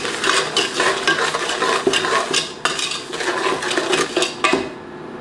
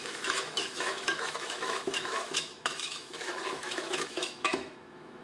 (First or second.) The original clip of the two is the first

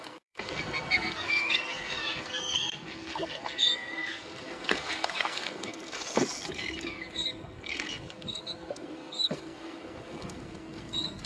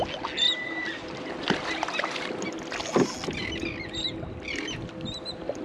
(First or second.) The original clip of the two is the second